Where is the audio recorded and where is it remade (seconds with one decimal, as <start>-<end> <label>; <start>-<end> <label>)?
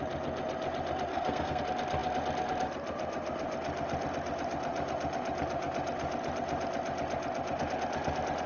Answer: 0.0-1.1 recorded; 1.1-1.6 remade; 1.6-8.5 recorded